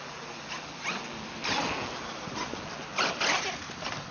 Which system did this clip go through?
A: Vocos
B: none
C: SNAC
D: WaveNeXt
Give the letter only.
B